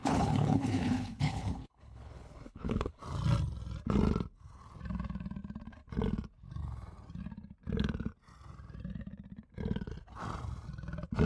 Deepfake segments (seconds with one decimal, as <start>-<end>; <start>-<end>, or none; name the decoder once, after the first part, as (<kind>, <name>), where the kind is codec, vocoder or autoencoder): 0.0-3.0 (codec, HILCodec)